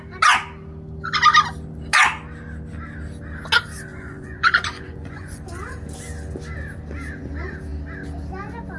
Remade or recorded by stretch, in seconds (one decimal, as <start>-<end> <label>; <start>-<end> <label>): 0.0-3.9 recorded; 3.9-5.4 remade; 5.4-8.8 recorded